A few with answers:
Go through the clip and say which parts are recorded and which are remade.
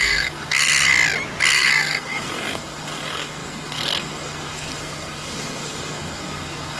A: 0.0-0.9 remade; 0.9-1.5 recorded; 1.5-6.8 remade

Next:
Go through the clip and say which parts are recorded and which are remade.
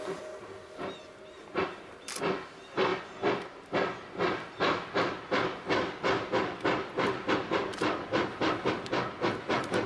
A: 0.0-9.9 recorded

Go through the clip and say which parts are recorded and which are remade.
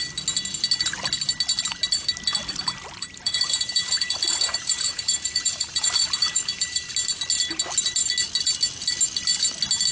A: 0.0-2.4 recorded; 2.4-6.9 remade; 6.9-9.9 recorded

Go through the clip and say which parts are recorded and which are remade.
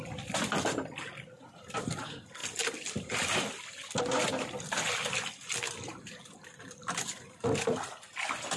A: 0.0-8.6 recorded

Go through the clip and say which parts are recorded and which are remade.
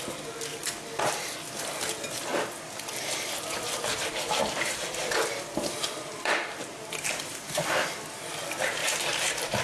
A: 0.0-0.5 recorded; 0.5-1.1 remade; 1.1-4.4 recorded; 4.4-8.3 remade; 8.3-8.8 recorded; 8.8-9.6 remade